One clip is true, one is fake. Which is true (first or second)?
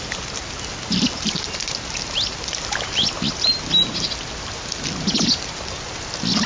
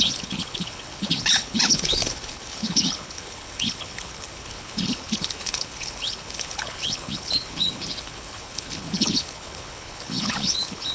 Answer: first